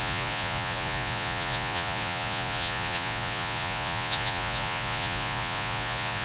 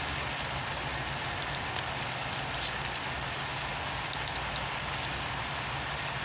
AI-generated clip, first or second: first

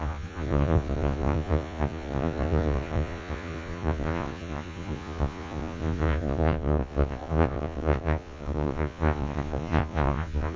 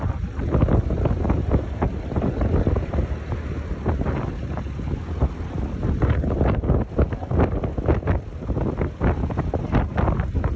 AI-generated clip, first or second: first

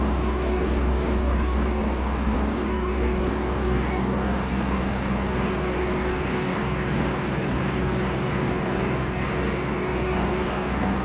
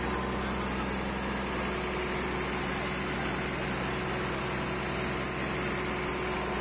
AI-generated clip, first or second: first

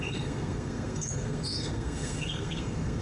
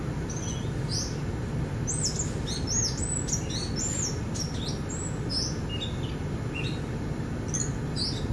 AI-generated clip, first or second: first